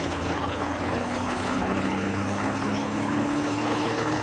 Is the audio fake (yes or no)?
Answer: yes